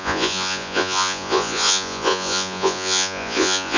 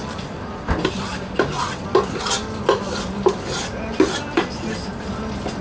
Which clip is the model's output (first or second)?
first